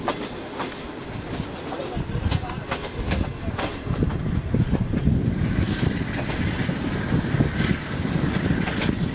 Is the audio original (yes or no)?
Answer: yes